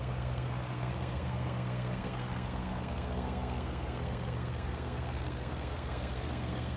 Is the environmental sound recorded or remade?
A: remade